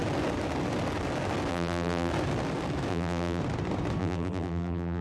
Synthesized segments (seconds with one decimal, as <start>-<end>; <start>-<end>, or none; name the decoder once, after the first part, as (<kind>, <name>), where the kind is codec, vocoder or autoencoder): 1.5-2.1 (vocoder, BigVGAN v2); 2.9-3.4; 4.0-5.0